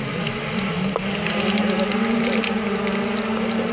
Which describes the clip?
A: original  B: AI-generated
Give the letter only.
A